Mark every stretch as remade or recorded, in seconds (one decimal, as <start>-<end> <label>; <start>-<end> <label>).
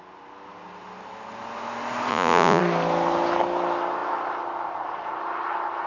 0.0-2.1 recorded; 2.1-2.6 remade; 2.6-5.9 recorded